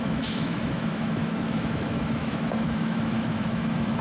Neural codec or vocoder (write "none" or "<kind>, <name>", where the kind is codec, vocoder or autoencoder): autoencoder, DAC-VAE